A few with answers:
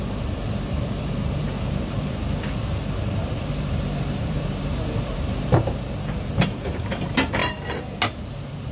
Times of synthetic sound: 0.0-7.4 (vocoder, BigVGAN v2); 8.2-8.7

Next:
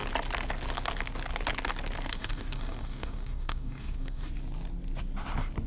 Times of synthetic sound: 2.1-4.3 (codec, DAC)

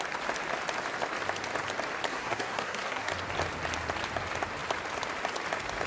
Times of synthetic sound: 2.1-3.1 (codec, SNAC)

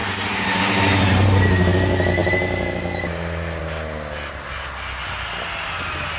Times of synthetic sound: none

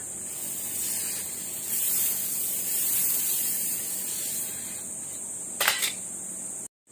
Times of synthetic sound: 1.7-3.8 (vocoder, BigVGAN v2)

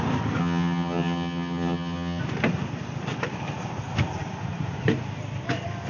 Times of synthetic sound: 0.4-2.2 (vocoder, HiFi-GAN)

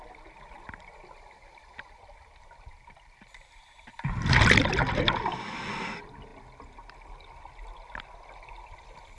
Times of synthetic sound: none